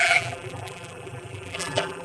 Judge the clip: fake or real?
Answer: fake